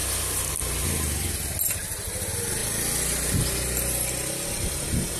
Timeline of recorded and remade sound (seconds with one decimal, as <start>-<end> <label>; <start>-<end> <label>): 0.0-0.5 remade; 0.5-5.2 recorded